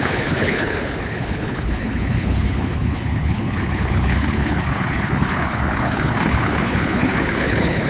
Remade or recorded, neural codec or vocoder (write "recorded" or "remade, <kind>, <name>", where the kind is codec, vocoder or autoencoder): remade, codec, HILCodec